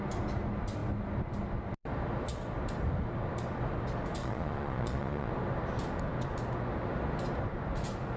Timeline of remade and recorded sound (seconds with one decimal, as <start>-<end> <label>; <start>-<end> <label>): 0.0-4.2 recorded; 4.2-5.3 remade; 5.3-8.2 recorded